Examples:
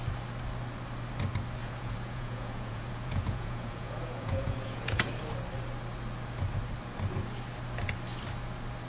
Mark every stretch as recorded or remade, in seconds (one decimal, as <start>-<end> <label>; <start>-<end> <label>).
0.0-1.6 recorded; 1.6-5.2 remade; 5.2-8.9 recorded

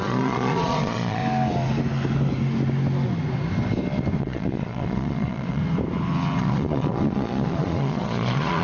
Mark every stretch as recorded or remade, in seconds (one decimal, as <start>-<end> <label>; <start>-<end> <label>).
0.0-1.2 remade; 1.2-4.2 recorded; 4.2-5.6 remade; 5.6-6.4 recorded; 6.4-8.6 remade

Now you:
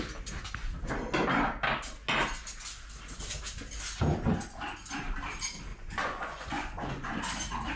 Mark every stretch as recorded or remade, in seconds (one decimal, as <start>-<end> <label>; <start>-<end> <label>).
0.0-5.7 recorded; 5.7-7.2 remade; 7.2-7.8 recorded